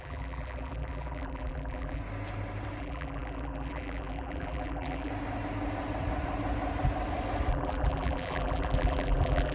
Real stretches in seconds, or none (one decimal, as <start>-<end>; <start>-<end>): 2.0-2.8; 5.1-7.5

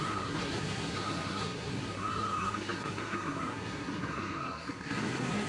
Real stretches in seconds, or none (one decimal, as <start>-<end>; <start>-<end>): none

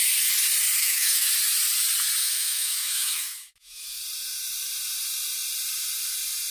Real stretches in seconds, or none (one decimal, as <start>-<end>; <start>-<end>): 0.0-0.8; 1.3-2.2; 4.0-6.5

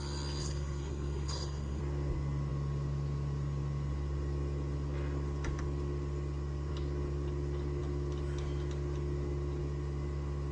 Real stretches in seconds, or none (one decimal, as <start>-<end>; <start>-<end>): 0.0-0.4; 1.8-10.5

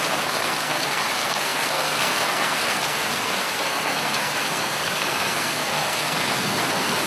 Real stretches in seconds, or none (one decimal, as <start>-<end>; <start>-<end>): none

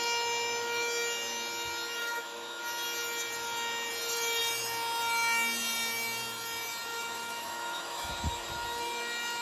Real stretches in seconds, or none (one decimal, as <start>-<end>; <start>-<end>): 0.0-2.0; 2.6-6.9; 8.1-9.4